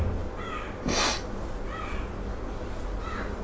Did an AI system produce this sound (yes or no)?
no